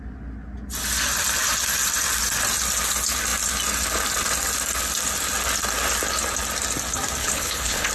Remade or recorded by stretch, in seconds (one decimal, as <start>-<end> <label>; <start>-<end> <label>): 0.0-7.2 recorded; 7.2-7.9 remade